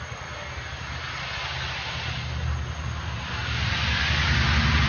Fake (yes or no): no